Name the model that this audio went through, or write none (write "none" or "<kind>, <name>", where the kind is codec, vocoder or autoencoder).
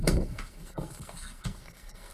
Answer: codec, SNAC